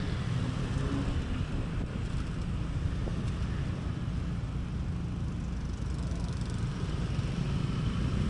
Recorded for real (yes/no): yes